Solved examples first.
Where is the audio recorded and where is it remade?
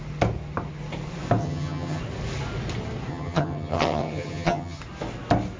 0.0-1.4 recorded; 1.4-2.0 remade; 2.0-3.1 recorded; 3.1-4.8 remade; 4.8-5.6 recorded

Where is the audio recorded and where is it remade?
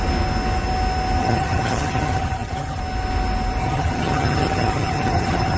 0.0-1.2 recorded; 1.2-2.8 remade; 2.8-3.6 recorded; 3.6-5.6 remade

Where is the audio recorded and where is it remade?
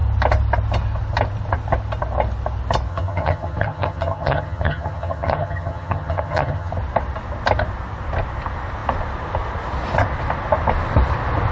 0.0-2.9 recorded; 2.9-6.7 remade; 6.7-11.5 recorded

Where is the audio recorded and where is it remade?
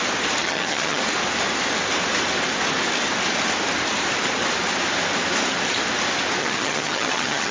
0.0-0.4 recorded; 0.4-1.0 remade; 1.0-6.4 recorded; 6.4-7.5 remade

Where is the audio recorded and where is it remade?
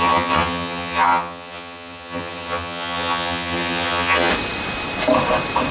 0.0-4.3 remade; 4.3-5.7 recorded